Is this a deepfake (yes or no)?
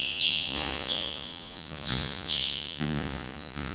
yes